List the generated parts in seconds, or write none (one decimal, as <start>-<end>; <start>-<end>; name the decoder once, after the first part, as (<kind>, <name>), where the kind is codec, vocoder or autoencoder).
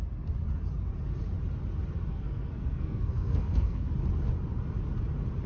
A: 2.1-3.9 (codec, SNAC)